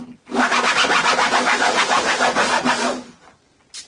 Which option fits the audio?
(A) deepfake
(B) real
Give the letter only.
B